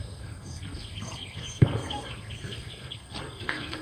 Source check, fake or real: fake